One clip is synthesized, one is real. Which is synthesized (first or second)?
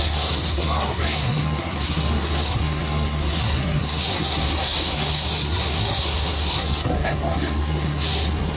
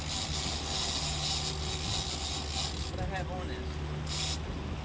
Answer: first